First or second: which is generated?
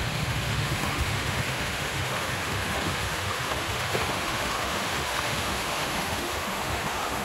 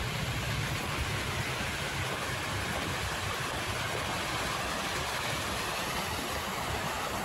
first